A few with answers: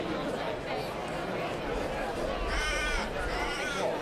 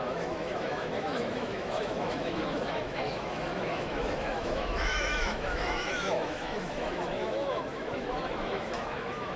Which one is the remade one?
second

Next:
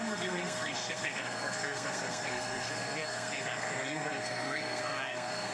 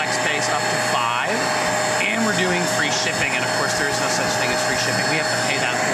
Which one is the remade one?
first